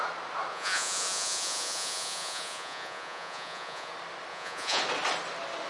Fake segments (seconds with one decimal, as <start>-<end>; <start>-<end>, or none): 0.5-3.9; 4.3-4.8